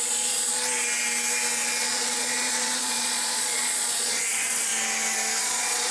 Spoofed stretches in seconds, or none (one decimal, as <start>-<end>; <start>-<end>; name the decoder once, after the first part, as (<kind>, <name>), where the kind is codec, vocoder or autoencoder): 0.0-0.5 (vocoder, Vocos); 1.8-4.7; 5.4-5.9